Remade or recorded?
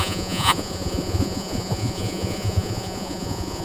remade